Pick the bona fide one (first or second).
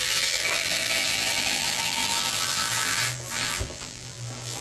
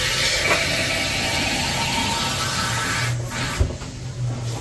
second